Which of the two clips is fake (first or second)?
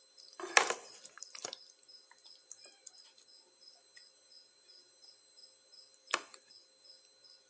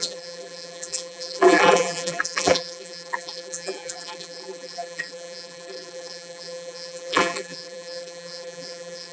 second